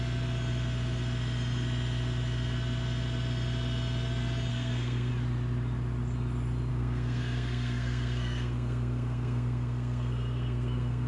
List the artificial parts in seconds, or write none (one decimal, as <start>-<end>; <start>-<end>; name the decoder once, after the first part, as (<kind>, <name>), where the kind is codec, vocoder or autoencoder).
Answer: 4.5-5.1 (codec, SNAC); 6.7-11.1